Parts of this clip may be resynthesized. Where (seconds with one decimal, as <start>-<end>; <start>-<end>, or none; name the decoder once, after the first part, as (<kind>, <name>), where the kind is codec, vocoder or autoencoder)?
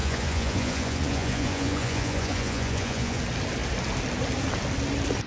0.0-3.2 (vocoder, Vocos)